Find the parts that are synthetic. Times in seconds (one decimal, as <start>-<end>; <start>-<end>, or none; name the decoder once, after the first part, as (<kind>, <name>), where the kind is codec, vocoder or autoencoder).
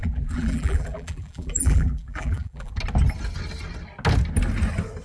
0.0-2.7 (vocoder, BigVGAN v2)